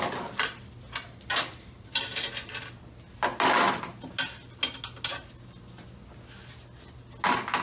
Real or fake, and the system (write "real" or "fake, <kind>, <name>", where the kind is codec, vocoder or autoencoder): real